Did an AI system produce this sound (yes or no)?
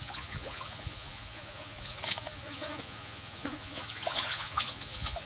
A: yes